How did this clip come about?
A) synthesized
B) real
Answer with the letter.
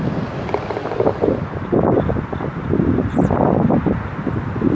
B